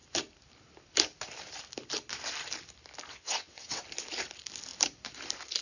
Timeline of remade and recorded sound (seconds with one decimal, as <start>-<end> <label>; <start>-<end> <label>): 0.0-3.1 recorded; 3.1-3.8 remade; 3.8-5.6 recorded